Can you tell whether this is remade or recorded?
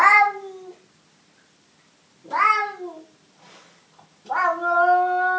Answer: recorded